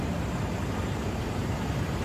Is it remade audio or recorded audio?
remade